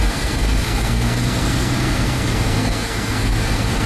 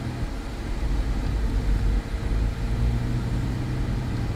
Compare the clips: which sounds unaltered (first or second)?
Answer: second